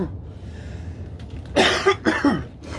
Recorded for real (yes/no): yes